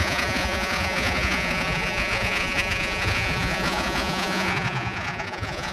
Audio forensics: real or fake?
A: fake